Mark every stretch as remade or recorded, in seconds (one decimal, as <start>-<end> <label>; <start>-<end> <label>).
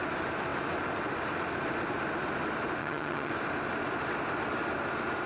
0.0-2.8 recorded; 2.8-3.3 remade; 3.3-5.3 recorded